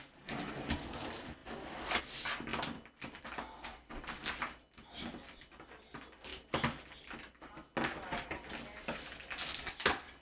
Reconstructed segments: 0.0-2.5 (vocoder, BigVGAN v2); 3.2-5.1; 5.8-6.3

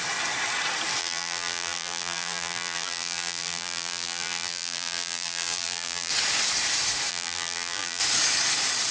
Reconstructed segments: 1.0-6.1 (vocoder, BigVGAN v2); 7.1-8.0

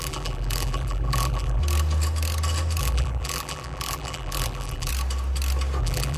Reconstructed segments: 0.0-1.6 (vocoder, BigVGAN v2); 2.8-4.9; 5.8-6.2

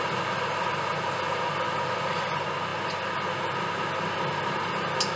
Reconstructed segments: none

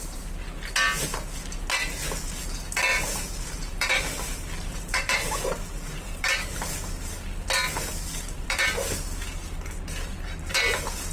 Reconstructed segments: 2.9-6.8 (vocoder, BigVGAN v2)

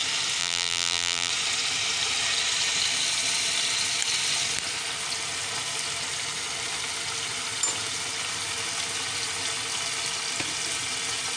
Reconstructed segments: 0.4-1.3 (vocoder, BigVGAN v2)

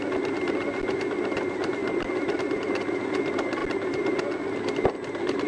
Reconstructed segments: none

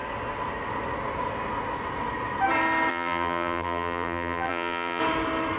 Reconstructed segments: 2.9-5.0 (vocoder, BigVGAN v2)